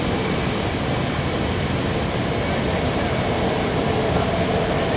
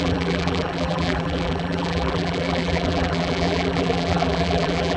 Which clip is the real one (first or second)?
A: first